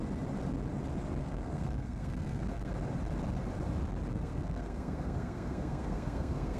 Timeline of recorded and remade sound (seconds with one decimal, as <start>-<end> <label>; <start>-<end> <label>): 0.0-1.2 recorded; 1.2-2.7 remade; 2.7-4.1 recorded; 4.1-6.6 remade